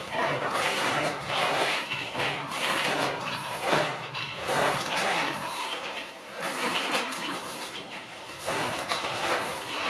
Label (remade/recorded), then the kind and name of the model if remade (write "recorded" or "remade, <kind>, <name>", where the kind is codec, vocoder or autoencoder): remade, codec, SNAC